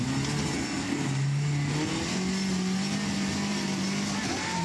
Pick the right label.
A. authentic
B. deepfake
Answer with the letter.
A